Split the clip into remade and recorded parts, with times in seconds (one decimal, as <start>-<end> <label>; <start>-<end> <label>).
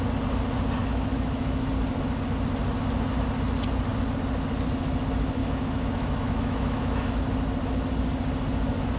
0.0-0.8 recorded; 0.8-1.7 remade; 1.7-5.4 recorded; 5.4-7.2 remade; 7.2-9.0 recorded